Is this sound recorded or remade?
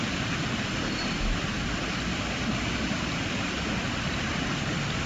recorded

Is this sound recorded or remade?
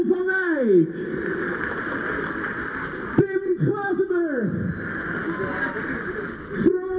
recorded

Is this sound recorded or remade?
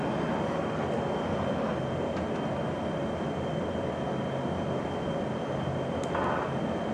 recorded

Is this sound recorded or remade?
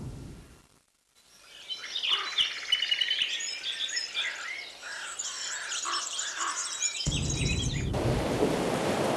recorded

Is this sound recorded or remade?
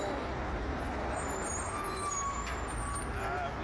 recorded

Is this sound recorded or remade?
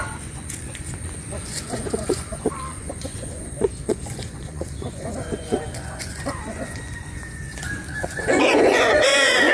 remade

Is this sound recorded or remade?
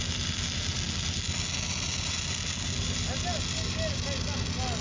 recorded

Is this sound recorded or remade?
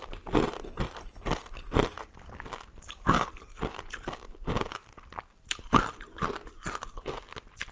recorded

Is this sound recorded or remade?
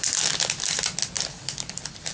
recorded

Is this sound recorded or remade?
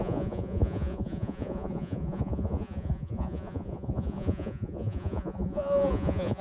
remade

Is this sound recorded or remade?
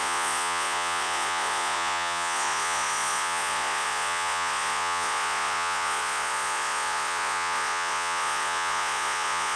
remade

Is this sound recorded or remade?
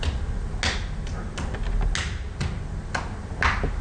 recorded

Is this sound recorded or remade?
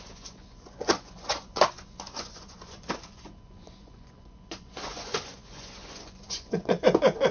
remade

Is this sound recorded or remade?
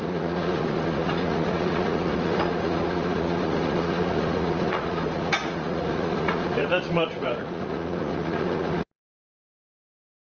remade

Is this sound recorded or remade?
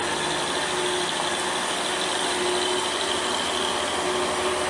recorded